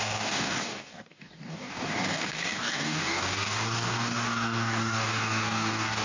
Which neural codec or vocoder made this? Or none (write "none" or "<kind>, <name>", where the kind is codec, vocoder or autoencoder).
codec, DAC